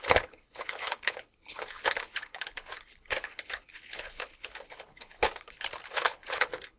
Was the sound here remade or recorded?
remade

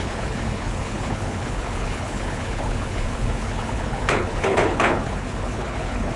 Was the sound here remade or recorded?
remade